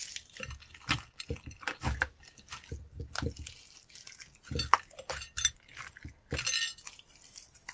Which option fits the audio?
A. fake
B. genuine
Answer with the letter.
B